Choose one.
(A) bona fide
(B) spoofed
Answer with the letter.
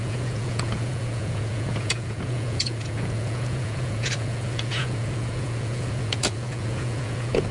B